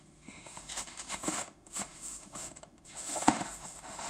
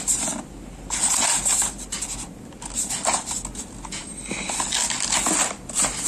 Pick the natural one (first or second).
second